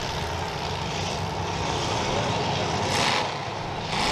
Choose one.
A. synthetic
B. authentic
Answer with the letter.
B